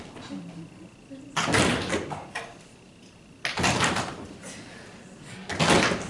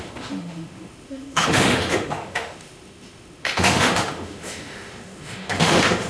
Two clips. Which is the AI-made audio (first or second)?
second